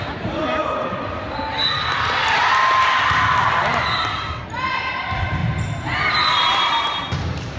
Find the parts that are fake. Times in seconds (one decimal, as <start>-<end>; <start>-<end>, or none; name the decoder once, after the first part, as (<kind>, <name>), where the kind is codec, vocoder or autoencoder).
0.0-0.4 (vocoder, BigVGAN v2); 5.0-5.4; 6.1-7.6